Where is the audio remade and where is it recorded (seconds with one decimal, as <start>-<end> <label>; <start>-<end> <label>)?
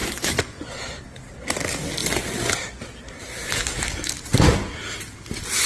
0.0-1.0 remade; 1.0-2.0 recorded; 2.0-2.5 remade; 2.5-5.7 recorded